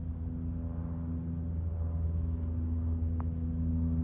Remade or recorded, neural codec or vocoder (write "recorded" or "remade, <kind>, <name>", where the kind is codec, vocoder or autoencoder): recorded